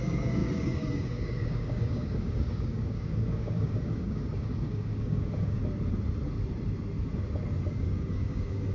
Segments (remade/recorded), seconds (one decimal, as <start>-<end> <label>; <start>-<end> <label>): 0.0-5.6 remade; 5.6-7.6 recorded; 7.6-8.7 remade